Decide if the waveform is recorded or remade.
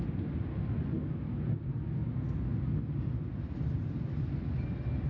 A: recorded